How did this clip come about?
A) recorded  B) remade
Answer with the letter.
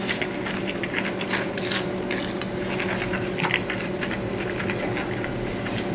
A